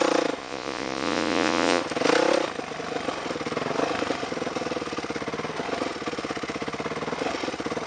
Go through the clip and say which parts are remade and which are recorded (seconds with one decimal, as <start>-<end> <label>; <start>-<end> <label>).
0.0-0.4 recorded; 0.4-1.8 remade; 1.8-7.9 recorded